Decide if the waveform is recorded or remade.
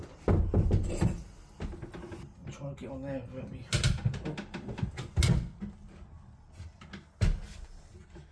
recorded